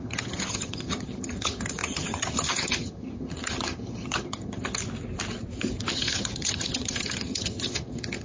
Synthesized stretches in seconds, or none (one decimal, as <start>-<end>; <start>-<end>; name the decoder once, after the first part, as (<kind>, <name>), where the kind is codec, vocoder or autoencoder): 0.0-4.8 (vocoder, HiFi-GAN); 5.9-8.2